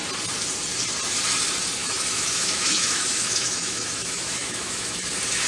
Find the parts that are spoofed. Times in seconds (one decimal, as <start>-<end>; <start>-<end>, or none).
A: 1.8-5.1